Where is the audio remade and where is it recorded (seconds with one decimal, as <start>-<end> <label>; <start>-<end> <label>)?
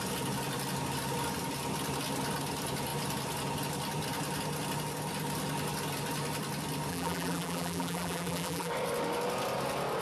0.0-6.9 recorded; 6.9-8.7 remade; 8.7-10.0 recorded